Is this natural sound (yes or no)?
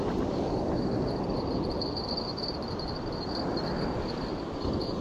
yes